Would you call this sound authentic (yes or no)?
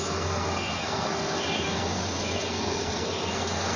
no